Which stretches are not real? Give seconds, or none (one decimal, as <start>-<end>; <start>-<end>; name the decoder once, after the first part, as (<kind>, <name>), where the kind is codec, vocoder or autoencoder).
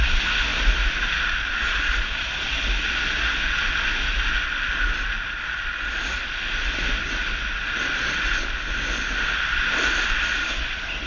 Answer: none